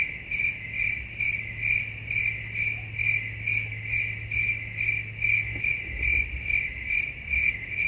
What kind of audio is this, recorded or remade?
recorded